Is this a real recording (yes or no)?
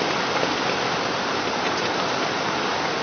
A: yes